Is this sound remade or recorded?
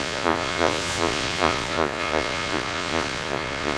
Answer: remade